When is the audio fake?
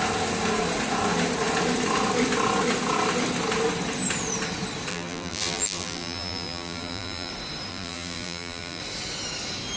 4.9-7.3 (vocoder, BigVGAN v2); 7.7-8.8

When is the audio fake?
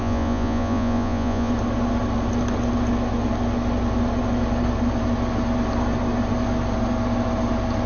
0.0-1.5 (vocoder, Vocos)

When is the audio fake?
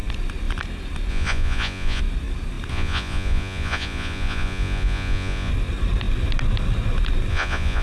1.1-2.0 (vocoder, Vocos); 2.7-5.5; 7.3-7.8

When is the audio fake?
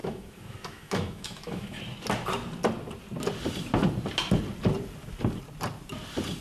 0.0-1.8 (autoencoder, DAC-VAE)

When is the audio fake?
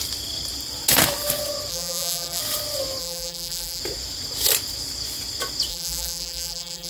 1.7-2.4 (vocoder, BigVGAN v2); 3.0-3.8; 5.7-6.9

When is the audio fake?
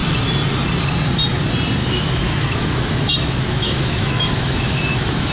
1.8-5.3 (autoencoder, DAC-VAE)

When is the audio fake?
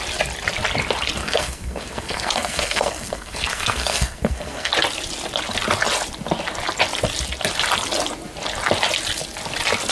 1.2-4.7 (codec, SNAC)